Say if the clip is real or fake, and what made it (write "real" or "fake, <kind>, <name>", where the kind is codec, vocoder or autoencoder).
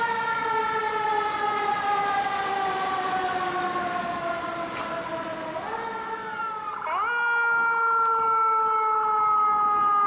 real